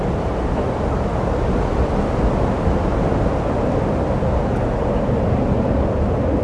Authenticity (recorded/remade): recorded